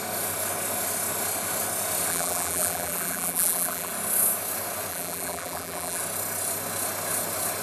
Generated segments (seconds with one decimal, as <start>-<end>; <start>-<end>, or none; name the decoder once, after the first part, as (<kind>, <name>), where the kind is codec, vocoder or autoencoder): 2.1-3.9 (vocoder, BigVGAN v2); 4.9-6.0